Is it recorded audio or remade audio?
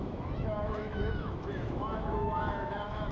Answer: remade